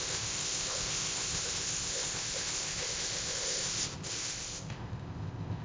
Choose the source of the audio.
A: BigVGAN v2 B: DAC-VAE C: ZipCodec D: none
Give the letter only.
C